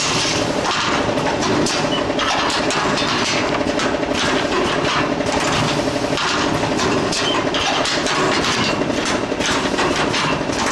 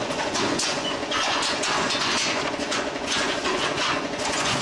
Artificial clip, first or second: second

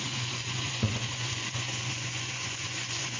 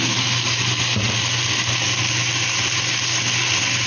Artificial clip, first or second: first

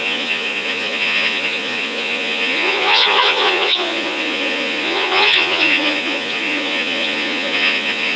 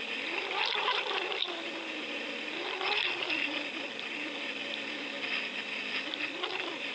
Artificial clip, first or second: first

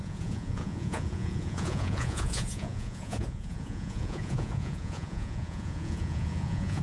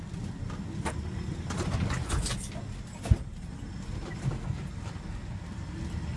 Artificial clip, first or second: first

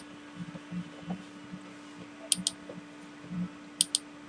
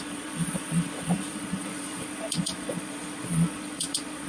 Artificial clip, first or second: second